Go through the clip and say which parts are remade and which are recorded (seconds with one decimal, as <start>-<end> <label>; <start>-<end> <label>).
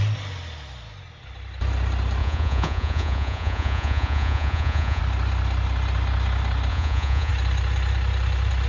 0.0-2.2 recorded; 2.2-5.0 remade; 5.0-6.7 recorded; 6.7-7.3 remade; 7.3-8.7 recorded